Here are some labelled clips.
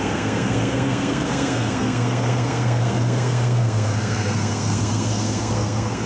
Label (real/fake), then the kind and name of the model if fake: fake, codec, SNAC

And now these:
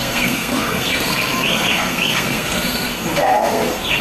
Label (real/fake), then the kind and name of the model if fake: fake, codec, SNAC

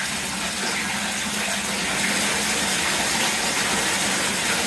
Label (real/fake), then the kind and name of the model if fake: real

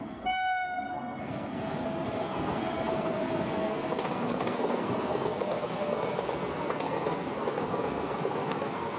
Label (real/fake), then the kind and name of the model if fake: fake, codec, SNAC